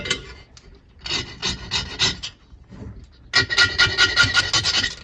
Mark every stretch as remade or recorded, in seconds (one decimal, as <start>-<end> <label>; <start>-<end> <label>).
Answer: 0.0-5.0 recorded